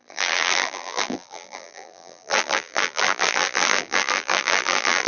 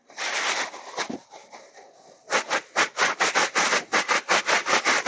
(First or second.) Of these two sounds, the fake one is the first